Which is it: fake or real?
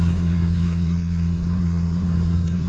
fake